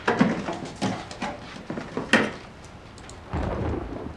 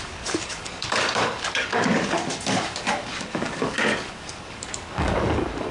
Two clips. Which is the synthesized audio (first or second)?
second